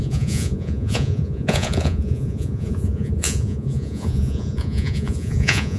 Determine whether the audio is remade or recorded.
remade